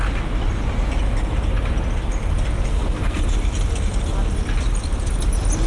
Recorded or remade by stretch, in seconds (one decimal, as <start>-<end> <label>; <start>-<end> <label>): 0.0-2.7 recorded; 2.7-3.2 remade; 3.2-5.7 recorded